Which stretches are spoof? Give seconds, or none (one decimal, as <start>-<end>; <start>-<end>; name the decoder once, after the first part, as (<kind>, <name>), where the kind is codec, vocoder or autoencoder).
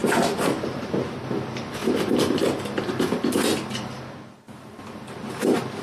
0.0-0.9 (vocoder, BigVGAN v2)